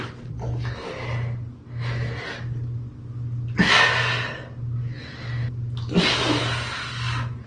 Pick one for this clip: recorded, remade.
recorded